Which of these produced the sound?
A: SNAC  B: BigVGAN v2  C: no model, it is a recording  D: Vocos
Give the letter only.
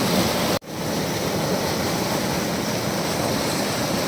C